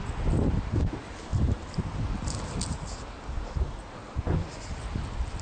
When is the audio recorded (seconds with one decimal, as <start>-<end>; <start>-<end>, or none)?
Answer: 0.0-4.0; 4.6-5.4